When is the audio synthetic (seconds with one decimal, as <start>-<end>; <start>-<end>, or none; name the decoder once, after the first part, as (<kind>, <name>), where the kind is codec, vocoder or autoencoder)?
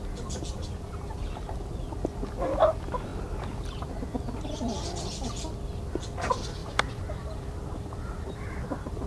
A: 6.6-8.6 (vocoder, BigVGAN v2)